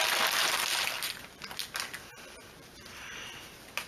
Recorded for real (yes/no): no